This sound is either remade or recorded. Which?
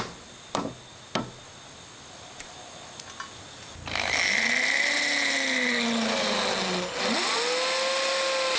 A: recorded